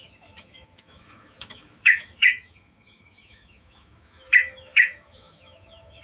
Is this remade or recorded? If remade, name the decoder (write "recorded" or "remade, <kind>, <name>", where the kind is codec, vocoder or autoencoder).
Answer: remade, autoencoder, DAC-VAE